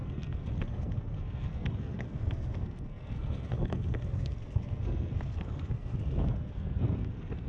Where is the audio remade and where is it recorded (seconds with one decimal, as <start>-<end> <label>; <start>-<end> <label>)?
0.0-7.5 remade